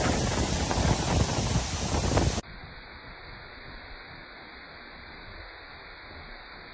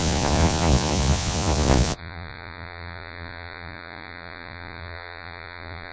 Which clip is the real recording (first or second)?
first